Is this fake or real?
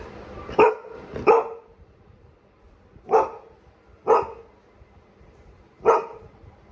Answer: real